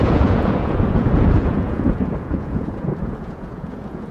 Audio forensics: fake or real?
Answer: fake